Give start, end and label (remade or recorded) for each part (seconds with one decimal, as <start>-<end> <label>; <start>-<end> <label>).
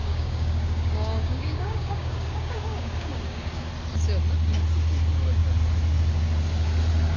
0.0-3.7 remade; 3.7-7.2 recorded